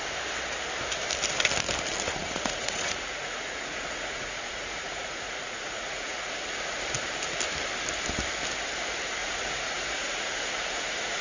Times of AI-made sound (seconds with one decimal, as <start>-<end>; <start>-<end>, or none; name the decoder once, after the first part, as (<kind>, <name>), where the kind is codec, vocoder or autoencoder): 2.2-6.3 (vocoder, Vocos); 9.2-11.2